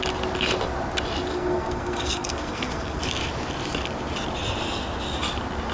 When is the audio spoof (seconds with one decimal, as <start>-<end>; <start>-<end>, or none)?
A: 1.3-3.0